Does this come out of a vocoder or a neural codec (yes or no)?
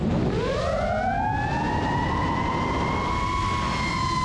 no